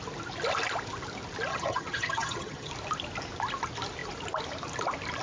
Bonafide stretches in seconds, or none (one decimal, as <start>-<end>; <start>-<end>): 0.0-1.5; 2.7-5.2